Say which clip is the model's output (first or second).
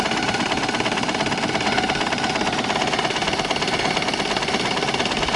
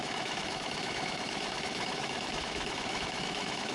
second